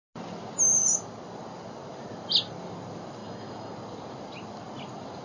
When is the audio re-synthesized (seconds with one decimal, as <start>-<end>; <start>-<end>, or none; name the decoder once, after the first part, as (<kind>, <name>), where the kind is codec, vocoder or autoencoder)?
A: 3.2-3.7 (autoencoder, DAC-VAE)